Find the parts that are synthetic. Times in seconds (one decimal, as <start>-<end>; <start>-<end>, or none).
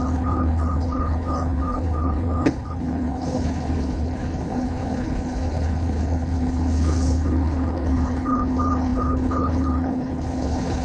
0.0-10.8